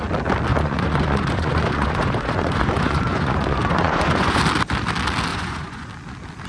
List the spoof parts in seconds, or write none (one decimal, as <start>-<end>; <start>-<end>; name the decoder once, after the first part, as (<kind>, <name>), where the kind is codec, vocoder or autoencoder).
0.5-4.4 (vocoder, Vocos); 5.3-5.9